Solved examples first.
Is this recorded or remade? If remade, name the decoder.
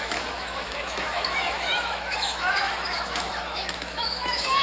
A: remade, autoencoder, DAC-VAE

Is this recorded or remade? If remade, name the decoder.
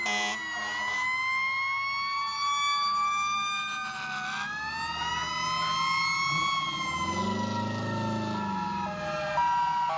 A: recorded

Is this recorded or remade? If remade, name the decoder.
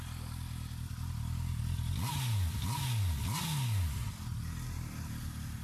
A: recorded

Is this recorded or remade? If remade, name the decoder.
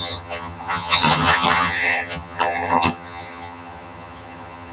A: remade, vocoder, HiFi-GAN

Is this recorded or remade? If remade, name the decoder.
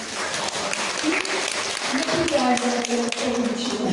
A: recorded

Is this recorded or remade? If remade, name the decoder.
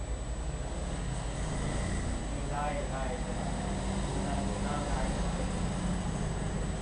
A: recorded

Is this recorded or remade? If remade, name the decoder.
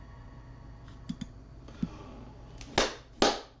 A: recorded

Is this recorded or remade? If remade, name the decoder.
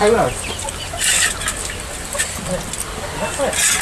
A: recorded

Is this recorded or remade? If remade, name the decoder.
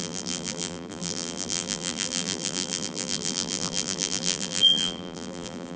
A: remade, vocoder, BigVGAN v2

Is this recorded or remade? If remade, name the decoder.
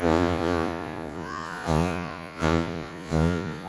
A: remade, vocoder, Vocos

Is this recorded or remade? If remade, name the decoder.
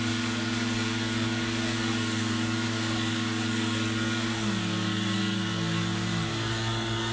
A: remade, codec, DAC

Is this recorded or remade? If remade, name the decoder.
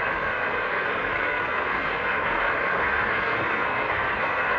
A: remade, codec, SNAC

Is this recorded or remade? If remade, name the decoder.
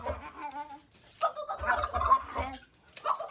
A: recorded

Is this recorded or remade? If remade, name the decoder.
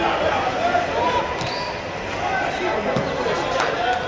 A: recorded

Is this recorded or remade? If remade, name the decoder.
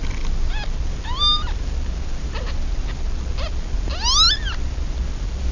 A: recorded